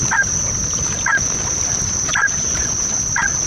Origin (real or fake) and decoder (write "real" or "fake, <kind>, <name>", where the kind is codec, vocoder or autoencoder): real